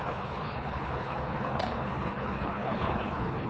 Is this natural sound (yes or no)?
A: no